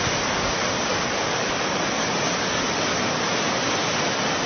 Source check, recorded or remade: recorded